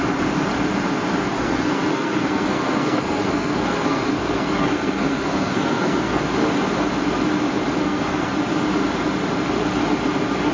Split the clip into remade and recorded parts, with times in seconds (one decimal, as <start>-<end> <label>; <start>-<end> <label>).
0.0-1.3 recorded; 1.3-6.2 remade; 6.2-7.8 recorded; 7.8-8.3 remade; 8.3-10.5 recorded